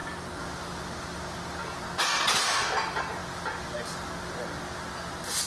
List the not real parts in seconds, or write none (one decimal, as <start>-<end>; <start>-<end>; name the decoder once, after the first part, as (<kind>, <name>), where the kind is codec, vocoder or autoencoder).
0.0-1.8 (vocoder, BigVGAN v2); 3.2-4.1